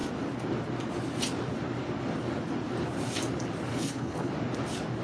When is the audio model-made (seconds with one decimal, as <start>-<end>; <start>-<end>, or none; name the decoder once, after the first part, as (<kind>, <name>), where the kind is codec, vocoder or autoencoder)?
3.7-4.3 (codec, HILCodec)